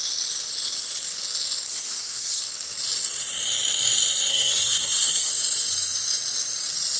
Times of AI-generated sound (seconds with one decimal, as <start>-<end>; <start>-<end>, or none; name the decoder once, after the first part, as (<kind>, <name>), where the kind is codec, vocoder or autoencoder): 1.7-2.4 (codec, SNAC); 4.3-5.3